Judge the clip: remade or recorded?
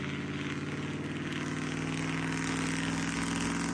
recorded